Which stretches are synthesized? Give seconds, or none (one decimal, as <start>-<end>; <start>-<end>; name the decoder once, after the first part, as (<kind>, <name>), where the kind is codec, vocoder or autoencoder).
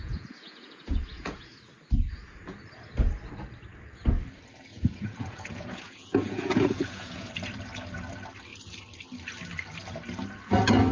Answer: 0.0-1.6 (vocoder, Vocos); 4.7-7.3